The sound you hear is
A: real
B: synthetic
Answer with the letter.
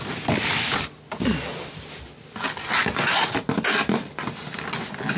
A